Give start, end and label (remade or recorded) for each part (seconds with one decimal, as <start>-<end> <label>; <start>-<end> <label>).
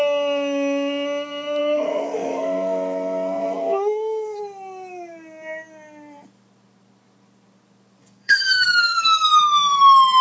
0.0-1.6 recorded; 1.6-4.4 remade; 4.4-8.0 recorded; 8.0-9.4 remade; 9.4-10.2 recorded